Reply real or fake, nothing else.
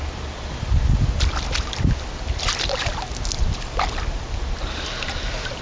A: real